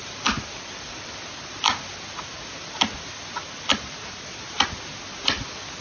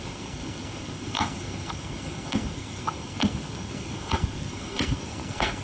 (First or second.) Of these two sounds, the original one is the first